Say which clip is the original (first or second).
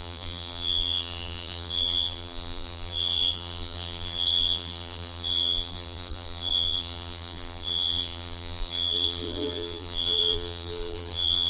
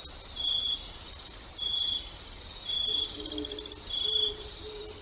second